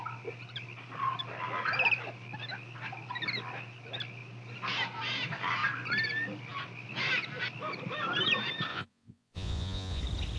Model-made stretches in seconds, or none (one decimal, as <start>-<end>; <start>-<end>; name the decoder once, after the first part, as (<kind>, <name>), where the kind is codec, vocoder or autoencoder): 8.7-10.0 (vocoder, Vocos)